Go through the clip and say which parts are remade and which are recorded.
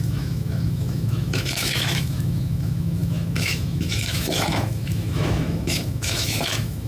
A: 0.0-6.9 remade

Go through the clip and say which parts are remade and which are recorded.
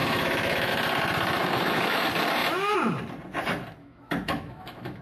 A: 0.0-0.7 remade; 0.7-1.4 recorded; 1.4-2.0 remade; 2.0-3.8 recorded; 3.8-5.0 remade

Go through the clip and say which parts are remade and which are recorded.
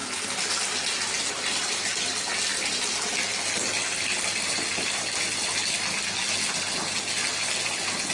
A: 0.0-8.1 recorded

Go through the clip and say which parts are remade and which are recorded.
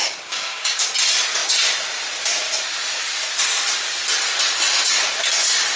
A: 0.0-0.9 remade; 0.9-5.8 recorded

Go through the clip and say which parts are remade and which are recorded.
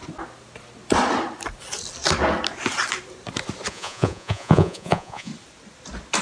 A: 0.0-3.7 recorded; 3.7-5.3 remade; 5.3-6.2 recorded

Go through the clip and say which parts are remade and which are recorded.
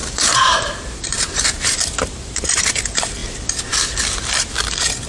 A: 0.0-2.7 remade; 2.7-5.1 recorded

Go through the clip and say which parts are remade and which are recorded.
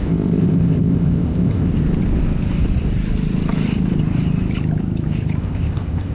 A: 0.0-1.7 remade; 1.7-5.4 recorded; 5.4-6.1 remade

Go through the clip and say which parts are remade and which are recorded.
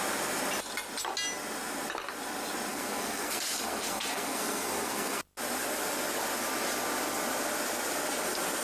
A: 0.0-2.7 recorded; 2.7-5.2 remade; 5.2-8.6 recorded